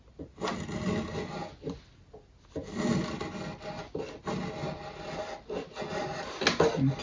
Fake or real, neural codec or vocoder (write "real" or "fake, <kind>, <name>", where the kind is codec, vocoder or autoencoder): real